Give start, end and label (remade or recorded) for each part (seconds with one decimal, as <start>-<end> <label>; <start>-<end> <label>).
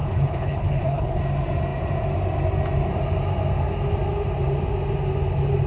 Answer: 0.0-1.2 remade; 1.2-5.7 recorded